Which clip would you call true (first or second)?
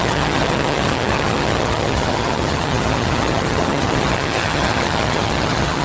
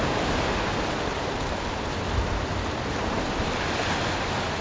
second